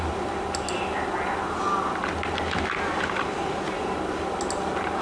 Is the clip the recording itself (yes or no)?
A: yes